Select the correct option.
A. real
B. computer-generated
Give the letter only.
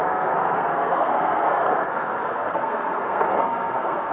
B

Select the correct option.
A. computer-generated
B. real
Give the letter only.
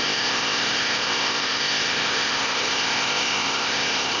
A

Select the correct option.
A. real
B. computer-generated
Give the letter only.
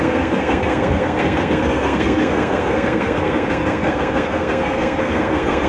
B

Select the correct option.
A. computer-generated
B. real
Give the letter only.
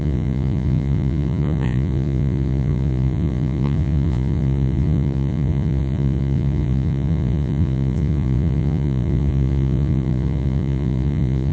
A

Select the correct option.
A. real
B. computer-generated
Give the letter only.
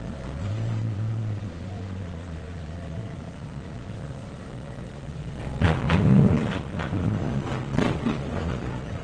B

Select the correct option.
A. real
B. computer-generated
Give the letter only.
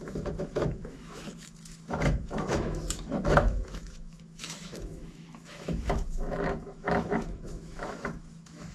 B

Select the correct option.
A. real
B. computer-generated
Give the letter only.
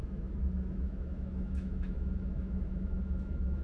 B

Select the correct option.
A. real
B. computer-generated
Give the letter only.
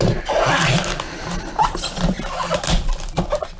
A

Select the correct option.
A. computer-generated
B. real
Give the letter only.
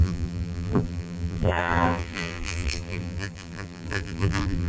A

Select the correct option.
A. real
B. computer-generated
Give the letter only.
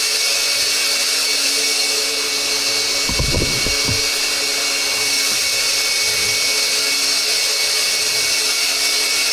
A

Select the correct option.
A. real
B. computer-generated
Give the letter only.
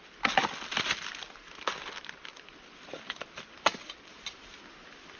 A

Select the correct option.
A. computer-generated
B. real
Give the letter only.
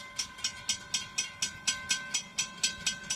B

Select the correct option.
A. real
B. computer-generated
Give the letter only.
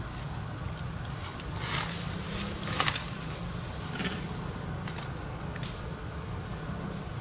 A